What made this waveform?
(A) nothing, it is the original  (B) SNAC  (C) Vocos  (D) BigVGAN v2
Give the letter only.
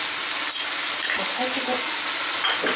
A